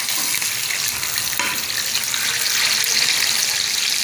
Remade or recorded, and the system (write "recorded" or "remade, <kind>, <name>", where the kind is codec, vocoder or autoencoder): recorded